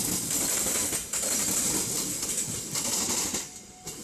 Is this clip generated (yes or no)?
no